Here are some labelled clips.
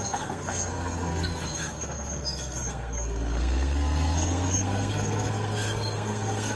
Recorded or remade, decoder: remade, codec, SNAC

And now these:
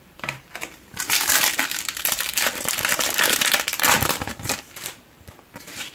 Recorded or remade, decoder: remade, vocoder, BigVGAN v2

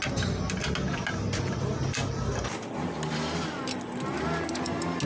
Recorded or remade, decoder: recorded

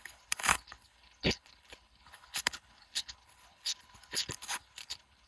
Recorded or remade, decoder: remade, codec, HILCodec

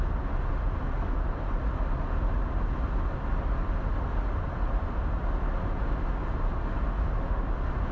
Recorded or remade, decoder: recorded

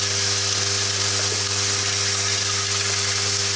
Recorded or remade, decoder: recorded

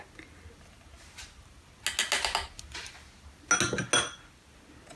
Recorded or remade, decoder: recorded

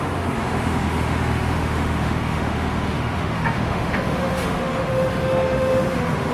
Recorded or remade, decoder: remade, autoencoder, DAC-VAE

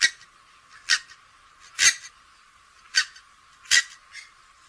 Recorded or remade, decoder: recorded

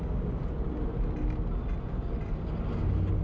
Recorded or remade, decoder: recorded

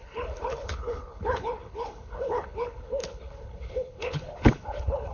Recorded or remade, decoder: remade, codec, HILCodec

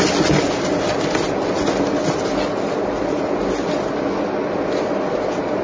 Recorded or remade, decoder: recorded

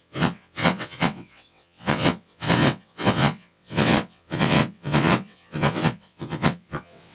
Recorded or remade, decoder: remade, vocoder, WaveNeXt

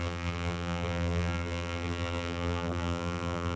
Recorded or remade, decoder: remade, vocoder, BigVGAN v2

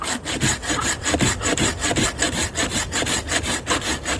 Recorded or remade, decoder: recorded